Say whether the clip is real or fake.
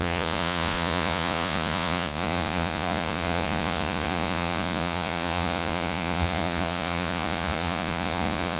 fake